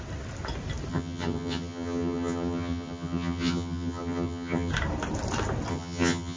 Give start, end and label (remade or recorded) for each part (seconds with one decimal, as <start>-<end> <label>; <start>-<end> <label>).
0.0-0.9 recorded; 0.9-4.7 remade; 4.7-5.7 recorded; 5.7-6.4 remade